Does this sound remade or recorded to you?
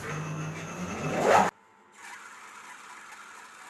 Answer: recorded